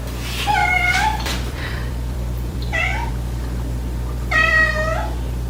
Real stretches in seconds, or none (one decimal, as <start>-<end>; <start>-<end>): 0.0-0.6; 3.1-5.5